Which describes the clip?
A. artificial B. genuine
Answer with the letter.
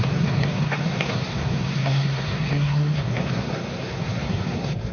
A